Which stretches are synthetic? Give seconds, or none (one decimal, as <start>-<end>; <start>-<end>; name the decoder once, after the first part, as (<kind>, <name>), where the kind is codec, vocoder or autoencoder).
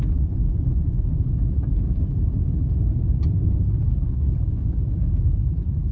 0.0-5.9 (vocoder, BigVGAN v2)